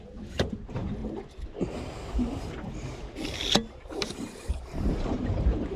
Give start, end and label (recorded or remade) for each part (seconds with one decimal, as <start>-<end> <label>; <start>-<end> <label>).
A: 0.0-1.0 remade; 1.0-4.5 recorded; 4.5-5.8 remade